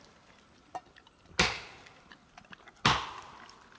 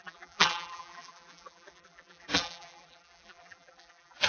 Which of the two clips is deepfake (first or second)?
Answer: second